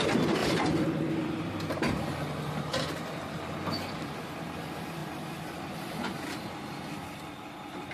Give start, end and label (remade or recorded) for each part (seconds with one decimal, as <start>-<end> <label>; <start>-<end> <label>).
0.0-0.4 recorded; 0.4-1.1 remade; 1.1-7.9 recorded